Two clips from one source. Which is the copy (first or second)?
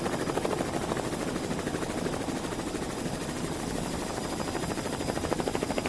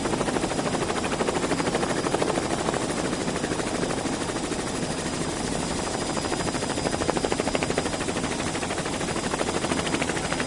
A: first